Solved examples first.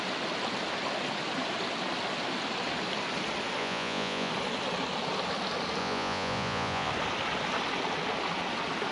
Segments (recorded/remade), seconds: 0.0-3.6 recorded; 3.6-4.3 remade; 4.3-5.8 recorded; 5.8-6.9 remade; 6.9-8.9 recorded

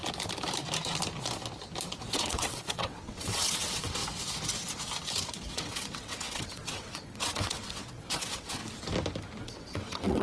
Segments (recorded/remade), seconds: 0.0-2.1 recorded; 2.1-4.0 remade; 4.0-5.4 recorded; 5.4-8.6 remade; 8.6-9.4 recorded; 9.4-10.2 remade

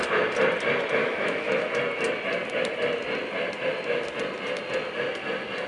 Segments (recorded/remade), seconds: 0.0-1.0 recorded; 1.0-1.8 remade; 1.8-5.7 recorded